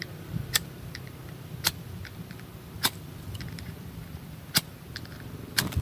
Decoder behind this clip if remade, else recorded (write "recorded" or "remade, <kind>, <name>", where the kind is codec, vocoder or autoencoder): remade, vocoder, BigVGAN v2